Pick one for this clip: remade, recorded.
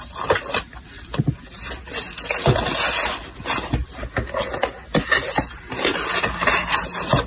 recorded